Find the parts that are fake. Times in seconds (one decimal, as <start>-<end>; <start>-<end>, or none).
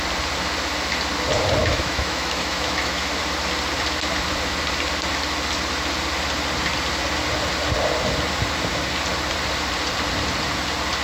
1.6-3.2